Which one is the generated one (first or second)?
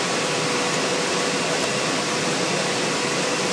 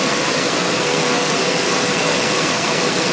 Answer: second